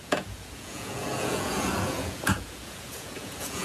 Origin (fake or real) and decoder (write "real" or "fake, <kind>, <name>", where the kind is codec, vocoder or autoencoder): fake, vocoder, Vocos